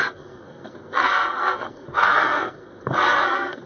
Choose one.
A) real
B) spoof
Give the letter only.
B